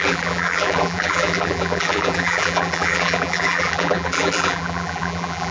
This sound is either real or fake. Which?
fake